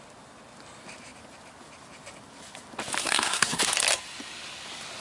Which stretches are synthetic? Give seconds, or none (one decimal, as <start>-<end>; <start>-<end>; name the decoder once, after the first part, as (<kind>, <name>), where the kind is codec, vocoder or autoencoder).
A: 3.0-3.6 (codec, SNAC)